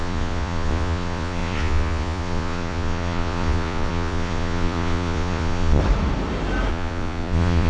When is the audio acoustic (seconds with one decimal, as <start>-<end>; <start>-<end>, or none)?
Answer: 5.8-6.7